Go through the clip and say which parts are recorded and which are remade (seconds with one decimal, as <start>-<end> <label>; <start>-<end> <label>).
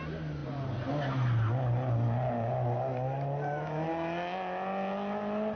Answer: 0.0-5.6 recorded